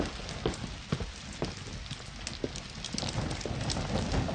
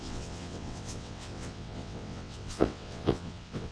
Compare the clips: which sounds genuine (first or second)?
first